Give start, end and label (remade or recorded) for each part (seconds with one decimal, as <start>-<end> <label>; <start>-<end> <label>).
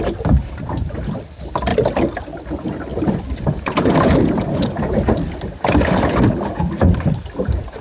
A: 0.0-1.7 remade; 1.7-2.2 recorded; 2.2-7.8 remade